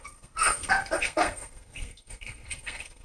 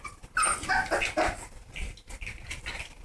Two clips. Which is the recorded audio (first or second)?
second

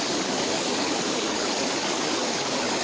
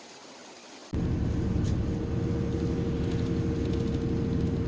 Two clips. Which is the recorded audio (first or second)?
second